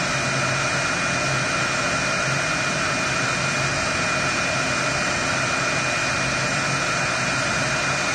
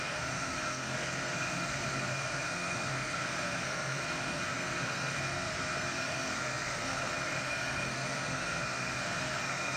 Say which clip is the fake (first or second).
second